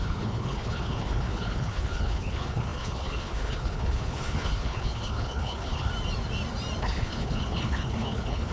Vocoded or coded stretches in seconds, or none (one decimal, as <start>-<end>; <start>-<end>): 0.0-5.9; 6.8-8.5